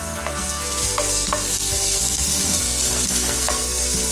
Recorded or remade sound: remade